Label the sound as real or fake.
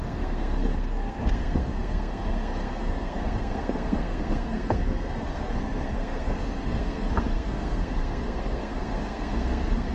fake